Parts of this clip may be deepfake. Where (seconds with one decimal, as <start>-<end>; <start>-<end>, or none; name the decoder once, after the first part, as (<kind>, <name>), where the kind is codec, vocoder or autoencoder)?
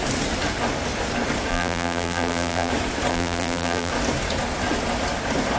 1.5-2.7 (vocoder, BigVGAN v2); 3.1-3.9